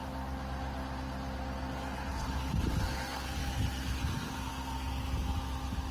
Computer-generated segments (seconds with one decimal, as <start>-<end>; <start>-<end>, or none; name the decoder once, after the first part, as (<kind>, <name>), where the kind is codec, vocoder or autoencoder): none